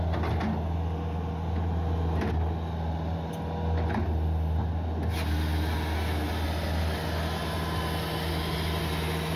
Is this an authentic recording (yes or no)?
yes